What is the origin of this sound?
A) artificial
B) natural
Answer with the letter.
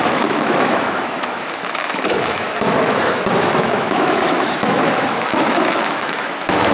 A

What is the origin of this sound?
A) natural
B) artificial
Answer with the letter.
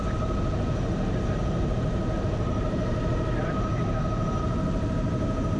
B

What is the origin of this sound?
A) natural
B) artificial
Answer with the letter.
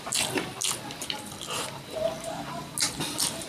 A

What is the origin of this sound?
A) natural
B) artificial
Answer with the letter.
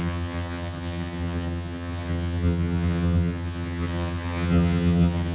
B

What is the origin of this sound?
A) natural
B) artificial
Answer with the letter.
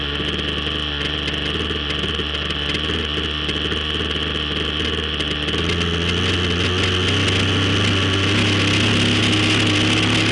A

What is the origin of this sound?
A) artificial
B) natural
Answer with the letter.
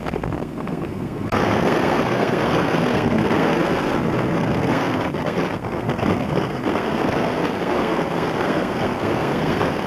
A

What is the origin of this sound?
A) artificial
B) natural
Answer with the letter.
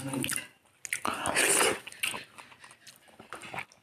B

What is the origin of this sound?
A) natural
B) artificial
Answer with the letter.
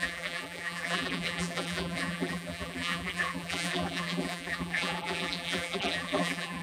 B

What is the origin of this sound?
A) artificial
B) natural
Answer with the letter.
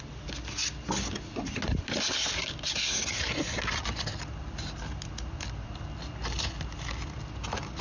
B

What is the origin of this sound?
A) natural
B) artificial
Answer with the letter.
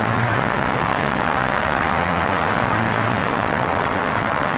B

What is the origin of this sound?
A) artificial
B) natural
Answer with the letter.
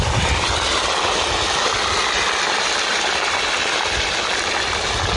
B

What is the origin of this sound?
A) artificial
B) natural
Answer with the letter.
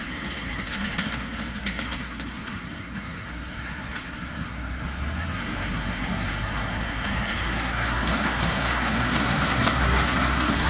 A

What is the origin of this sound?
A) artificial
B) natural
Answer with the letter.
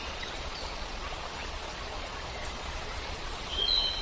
A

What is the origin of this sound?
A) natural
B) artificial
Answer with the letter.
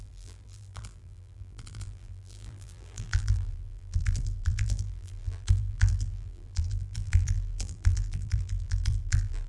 B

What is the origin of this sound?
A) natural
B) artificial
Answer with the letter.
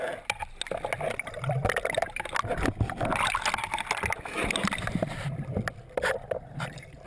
A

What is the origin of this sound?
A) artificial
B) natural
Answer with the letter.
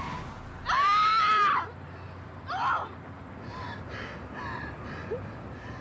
B